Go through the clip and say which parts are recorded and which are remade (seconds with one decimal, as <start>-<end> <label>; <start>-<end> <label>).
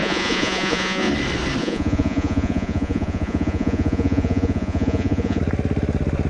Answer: 0.0-1.1 remade; 1.1-1.6 recorded; 1.6-5.4 remade; 5.4-6.3 recorded